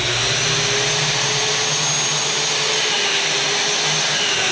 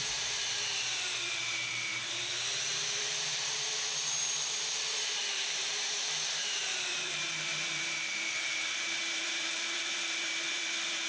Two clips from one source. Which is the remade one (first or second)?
second